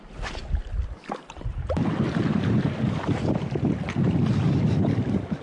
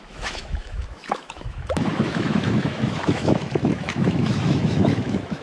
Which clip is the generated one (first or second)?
second